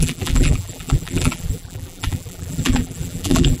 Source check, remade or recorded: remade